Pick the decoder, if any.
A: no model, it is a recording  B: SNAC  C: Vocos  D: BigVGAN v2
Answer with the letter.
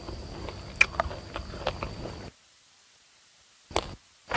A